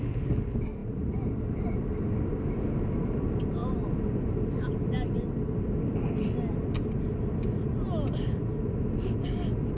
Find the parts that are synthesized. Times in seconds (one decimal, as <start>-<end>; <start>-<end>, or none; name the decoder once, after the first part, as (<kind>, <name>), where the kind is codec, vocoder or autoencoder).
none